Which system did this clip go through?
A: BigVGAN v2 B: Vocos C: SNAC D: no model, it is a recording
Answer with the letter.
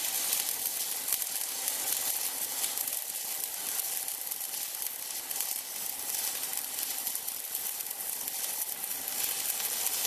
D